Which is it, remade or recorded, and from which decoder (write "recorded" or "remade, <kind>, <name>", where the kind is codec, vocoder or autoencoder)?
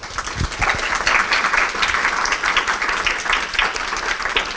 recorded